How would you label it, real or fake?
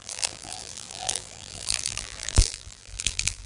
fake